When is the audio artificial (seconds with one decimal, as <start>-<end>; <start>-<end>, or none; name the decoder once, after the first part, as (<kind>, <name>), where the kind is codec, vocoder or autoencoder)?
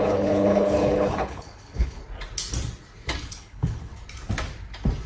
0.0-2.0 (codec, HILCodec); 3.2-3.9